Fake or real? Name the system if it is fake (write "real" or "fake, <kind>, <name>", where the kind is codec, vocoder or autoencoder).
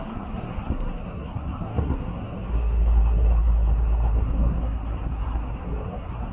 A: fake, codec, SNAC